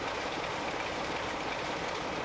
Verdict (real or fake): real